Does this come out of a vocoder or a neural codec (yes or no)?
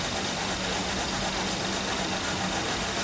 no